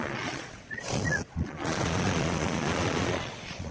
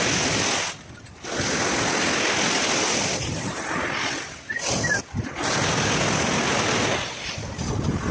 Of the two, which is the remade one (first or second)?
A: first